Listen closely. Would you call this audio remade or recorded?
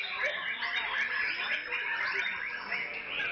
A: recorded